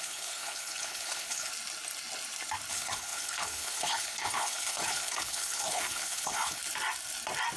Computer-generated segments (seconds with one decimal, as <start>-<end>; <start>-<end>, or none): 0.0-1.5; 2.7-6.6